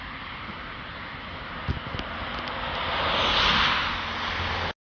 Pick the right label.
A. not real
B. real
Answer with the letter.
B